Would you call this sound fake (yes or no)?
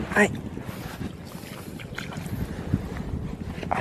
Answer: no